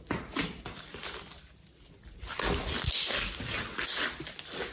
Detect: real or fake real